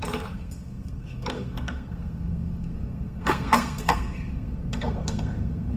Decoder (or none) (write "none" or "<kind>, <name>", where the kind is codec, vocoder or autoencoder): codec, SNAC